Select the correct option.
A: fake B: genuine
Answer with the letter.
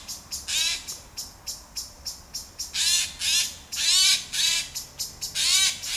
B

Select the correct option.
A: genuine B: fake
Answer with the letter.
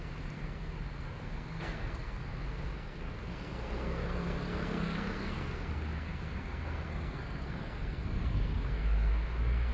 B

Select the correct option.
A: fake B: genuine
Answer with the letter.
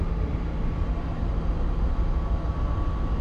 B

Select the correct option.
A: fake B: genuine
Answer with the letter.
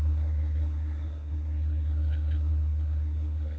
A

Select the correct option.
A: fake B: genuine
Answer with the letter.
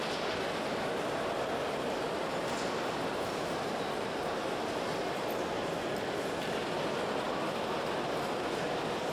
B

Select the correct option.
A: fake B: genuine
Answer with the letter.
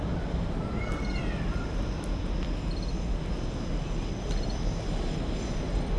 B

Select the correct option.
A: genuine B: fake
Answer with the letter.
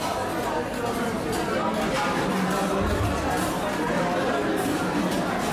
A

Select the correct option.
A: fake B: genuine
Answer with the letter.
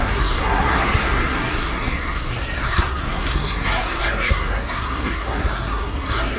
A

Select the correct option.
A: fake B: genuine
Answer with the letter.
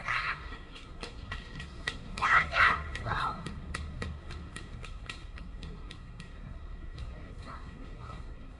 A